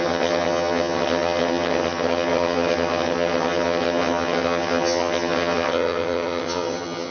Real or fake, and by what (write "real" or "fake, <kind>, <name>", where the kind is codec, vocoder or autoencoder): fake, vocoder, HiFi-GAN